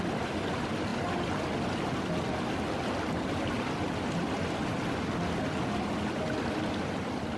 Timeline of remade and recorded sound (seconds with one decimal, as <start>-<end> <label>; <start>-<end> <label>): 0.0-7.4 recorded